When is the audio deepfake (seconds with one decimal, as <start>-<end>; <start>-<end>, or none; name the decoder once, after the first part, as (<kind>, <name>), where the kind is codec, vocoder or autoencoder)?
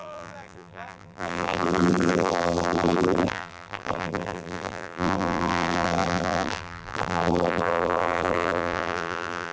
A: 0.0-9.5 (vocoder, BigVGAN v2)